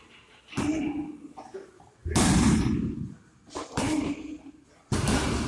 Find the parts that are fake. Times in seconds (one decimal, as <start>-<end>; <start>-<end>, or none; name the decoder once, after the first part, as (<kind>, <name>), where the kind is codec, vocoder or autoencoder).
none